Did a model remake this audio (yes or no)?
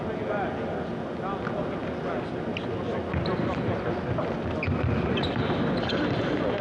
no